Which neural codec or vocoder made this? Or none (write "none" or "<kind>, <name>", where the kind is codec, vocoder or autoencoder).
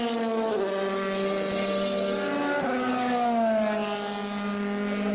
none